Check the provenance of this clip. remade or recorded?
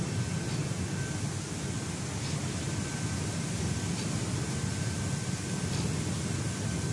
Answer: recorded